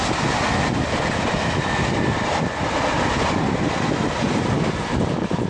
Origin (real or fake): fake